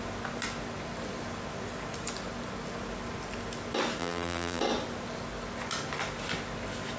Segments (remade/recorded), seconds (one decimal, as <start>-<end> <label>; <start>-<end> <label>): 0.0-4.0 recorded; 4.0-4.6 remade; 4.6-7.0 recorded